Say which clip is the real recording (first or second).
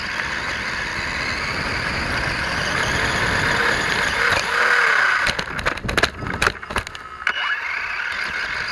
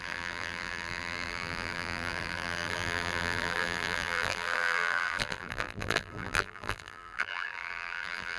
first